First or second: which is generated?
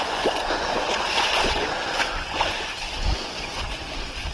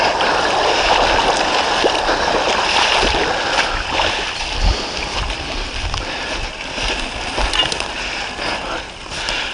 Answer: first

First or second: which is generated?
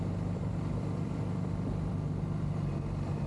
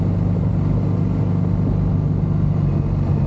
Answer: first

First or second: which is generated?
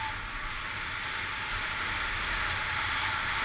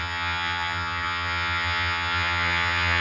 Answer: second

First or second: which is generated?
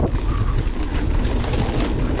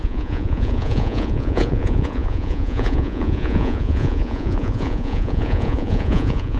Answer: second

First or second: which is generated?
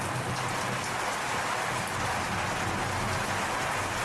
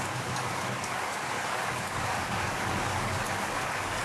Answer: second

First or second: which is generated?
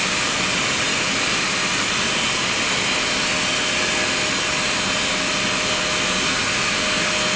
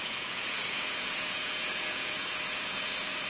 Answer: second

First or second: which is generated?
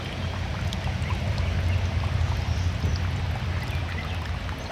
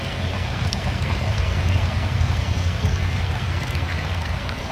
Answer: second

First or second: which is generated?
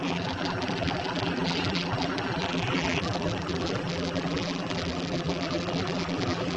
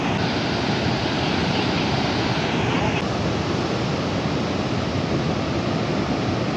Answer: first